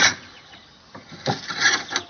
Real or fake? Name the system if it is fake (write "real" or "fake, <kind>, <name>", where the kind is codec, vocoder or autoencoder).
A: real